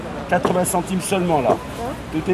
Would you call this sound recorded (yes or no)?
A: yes